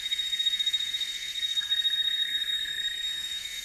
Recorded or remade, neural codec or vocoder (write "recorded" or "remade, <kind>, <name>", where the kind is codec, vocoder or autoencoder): remade, codec, SNAC